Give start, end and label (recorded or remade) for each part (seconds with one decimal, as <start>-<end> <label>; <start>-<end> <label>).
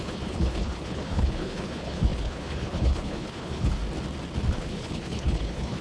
0.0-3.8 remade; 3.8-4.5 recorded; 4.5-5.8 remade